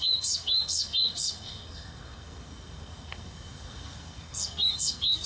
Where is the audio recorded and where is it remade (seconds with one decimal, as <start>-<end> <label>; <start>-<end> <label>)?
0.0-5.3 remade